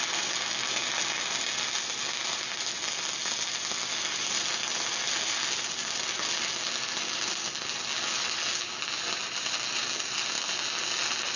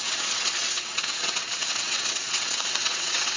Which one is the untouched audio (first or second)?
first